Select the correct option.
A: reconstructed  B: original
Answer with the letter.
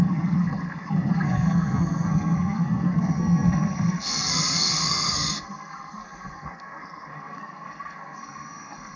A